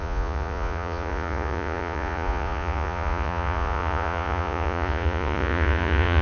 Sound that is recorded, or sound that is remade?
remade